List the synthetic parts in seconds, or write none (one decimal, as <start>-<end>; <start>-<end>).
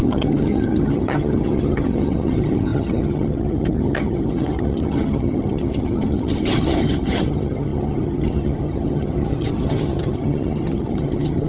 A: 0.0-11.5